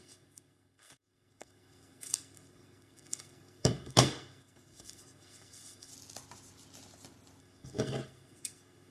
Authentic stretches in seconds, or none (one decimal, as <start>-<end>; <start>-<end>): 5.9-7.4